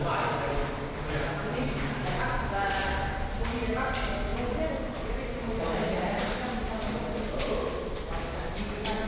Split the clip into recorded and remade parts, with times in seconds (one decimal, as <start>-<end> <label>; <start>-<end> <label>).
0.0-9.1 recorded